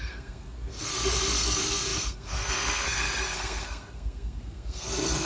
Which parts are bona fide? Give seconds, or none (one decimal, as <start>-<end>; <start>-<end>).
none